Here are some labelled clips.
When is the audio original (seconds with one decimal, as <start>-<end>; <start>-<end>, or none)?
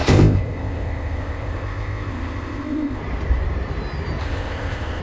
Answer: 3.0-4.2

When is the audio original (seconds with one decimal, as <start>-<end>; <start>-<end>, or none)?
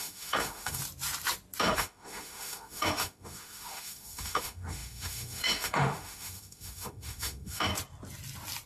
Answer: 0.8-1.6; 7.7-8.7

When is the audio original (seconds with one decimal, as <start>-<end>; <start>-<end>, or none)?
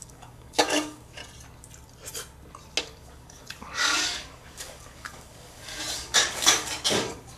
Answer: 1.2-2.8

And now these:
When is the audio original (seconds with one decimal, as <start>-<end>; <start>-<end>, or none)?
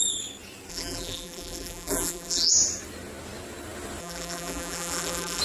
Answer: 0.0-0.7; 2.5-4.0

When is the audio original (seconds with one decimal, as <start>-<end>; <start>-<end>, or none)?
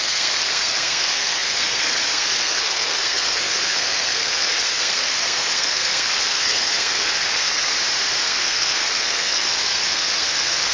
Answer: 7.7-8.2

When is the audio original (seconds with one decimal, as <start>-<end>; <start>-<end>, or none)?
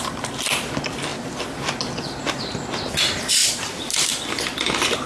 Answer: 0.0-5.1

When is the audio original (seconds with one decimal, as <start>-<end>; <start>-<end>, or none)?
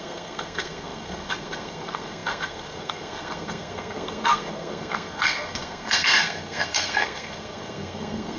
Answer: none